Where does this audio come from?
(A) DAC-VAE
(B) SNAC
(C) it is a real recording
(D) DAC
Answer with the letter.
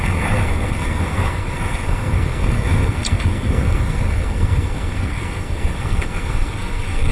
B